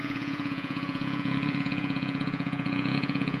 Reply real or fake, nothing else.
fake